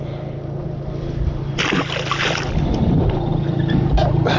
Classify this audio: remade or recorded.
recorded